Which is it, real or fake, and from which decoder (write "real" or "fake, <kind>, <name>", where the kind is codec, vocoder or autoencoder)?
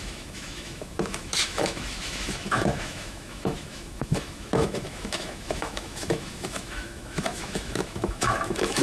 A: fake, autoencoder, DAC-VAE